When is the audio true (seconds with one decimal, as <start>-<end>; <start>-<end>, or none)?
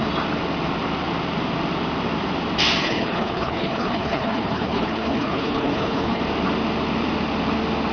0.0-2.8; 6.2-7.9